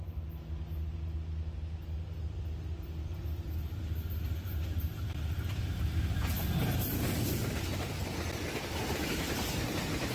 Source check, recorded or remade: recorded